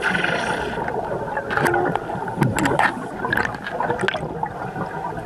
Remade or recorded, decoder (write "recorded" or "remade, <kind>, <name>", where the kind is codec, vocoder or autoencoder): recorded